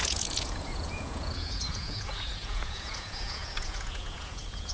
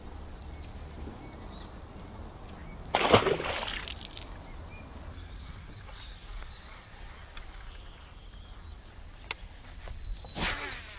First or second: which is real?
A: second